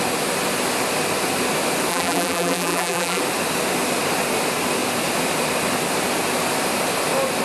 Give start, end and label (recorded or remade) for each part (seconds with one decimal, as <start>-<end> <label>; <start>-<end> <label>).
0.0-1.9 recorded; 1.9-3.2 remade; 3.2-7.4 recorded